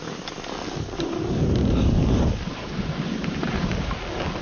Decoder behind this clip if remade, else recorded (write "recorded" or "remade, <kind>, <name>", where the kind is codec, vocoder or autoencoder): recorded